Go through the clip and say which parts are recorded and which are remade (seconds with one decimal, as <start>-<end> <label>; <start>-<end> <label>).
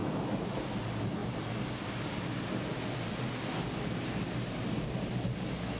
0.0-0.6 remade; 0.6-5.8 recorded